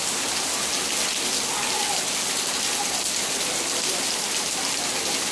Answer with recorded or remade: recorded